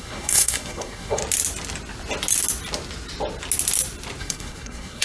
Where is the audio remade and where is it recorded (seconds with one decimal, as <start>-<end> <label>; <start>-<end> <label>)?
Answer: 0.0-1.2 remade; 1.2-4.2 recorded; 4.2-5.0 remade